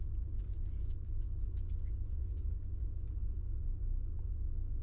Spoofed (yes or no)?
yes